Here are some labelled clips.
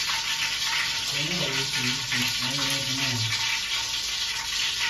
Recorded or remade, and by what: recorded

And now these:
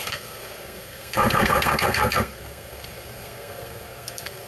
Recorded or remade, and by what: remade, codec, SNAC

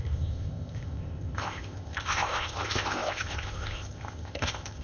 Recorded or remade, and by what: remade, codec, ZipCodec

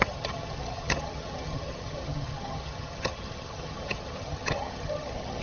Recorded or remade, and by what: remade, vocoder, HiFi-GAN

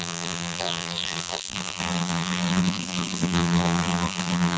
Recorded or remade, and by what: remade, vocoder, BigVGAN v2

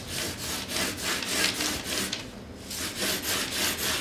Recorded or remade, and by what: recorded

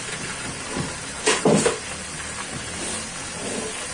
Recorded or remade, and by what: recorded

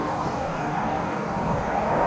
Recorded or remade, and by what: remade, codec, DAC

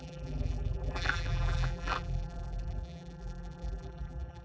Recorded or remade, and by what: remade, vocoder, BigVGAN v2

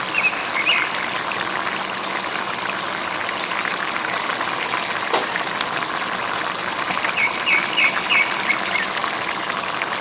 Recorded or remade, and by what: recorded